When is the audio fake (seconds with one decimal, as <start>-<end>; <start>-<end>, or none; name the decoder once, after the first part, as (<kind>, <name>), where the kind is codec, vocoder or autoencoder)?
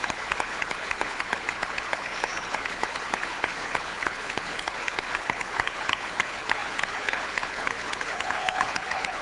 0.0-9.2 (codec, HILCodec)